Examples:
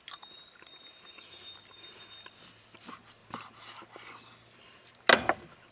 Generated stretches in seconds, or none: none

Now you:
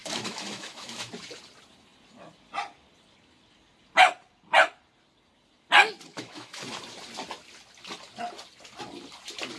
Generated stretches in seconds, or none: 0.0-1.1; 6.1-6.6

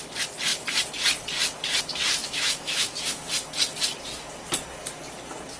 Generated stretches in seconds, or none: 2.2-3.3

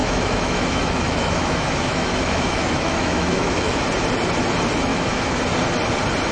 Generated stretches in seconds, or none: 0.0-3.8; 4.9-5.4

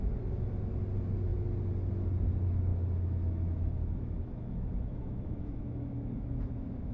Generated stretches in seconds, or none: 2.7-6.9